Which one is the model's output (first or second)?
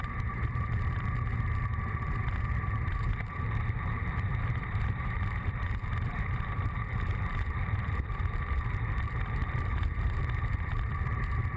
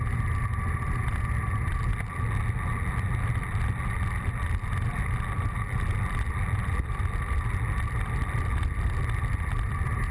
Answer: first